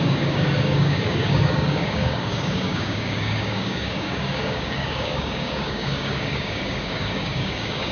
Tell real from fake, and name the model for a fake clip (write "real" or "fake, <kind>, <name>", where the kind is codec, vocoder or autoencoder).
fake, codec, DAC